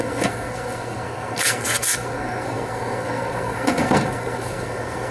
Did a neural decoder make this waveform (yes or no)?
yes